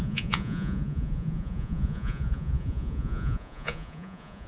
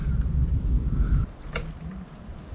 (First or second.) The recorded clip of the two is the second